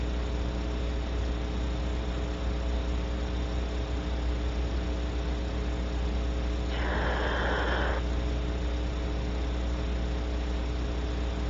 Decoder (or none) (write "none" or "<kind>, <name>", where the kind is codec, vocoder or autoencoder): none